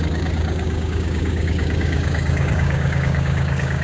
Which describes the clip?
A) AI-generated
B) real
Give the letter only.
A